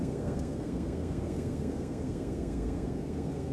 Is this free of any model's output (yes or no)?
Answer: no